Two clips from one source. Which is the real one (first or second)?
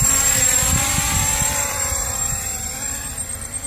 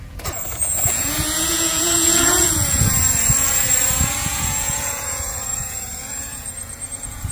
first